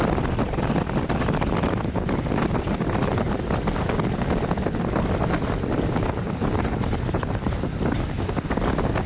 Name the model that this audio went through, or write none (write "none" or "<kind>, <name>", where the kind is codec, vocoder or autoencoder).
none